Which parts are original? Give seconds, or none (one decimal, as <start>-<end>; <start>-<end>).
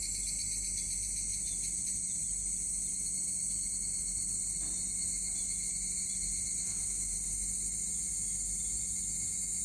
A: 0.0-9.6